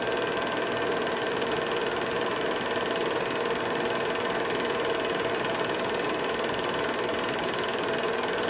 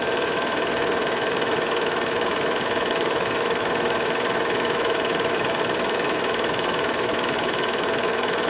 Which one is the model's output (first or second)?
second